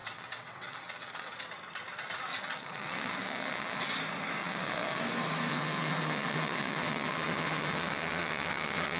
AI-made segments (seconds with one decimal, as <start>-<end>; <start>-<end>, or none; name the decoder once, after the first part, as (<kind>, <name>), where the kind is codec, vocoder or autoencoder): 0.0-1.4 (vocoder, WaveNeXt); 2.3-3.9; 4.4-5.0; 5.5-9.0